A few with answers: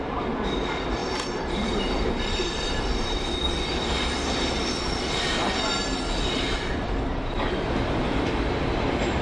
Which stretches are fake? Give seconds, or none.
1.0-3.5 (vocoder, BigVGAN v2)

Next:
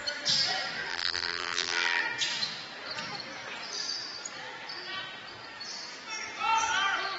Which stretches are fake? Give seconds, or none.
0.9-2.0 (vocoder, BigVGAN v2)

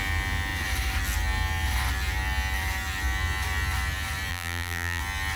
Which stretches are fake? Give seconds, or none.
4.3-5.0 (vocoder, BigVGAN v2)

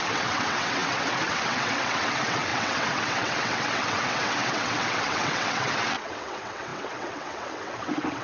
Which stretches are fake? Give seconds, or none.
0.0-8.2 (vocoder, WaveNeXt)

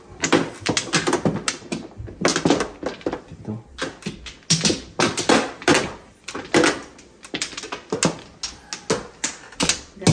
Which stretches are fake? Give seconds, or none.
none

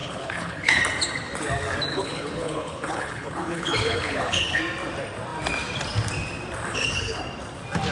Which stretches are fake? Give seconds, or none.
0.0-0.8 (codec, HILCodec); 1.9-4.6; 6.7-7.2

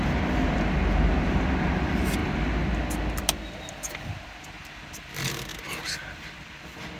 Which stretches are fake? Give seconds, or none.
none

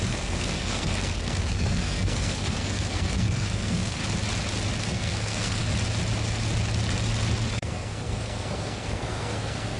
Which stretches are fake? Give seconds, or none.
0.0-4.0 (codec, SNAC); 4.8-5.6; 7.5-9.8